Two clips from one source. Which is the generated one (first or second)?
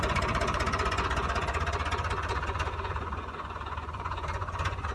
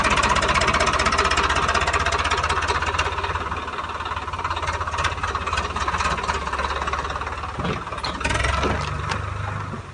first